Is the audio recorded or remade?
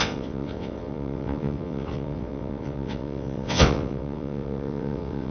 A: remade